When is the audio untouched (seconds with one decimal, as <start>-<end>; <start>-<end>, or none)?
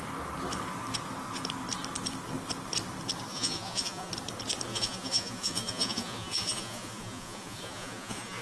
0.0-3.3; 4.1-4.7